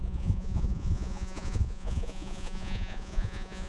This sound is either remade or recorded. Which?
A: remade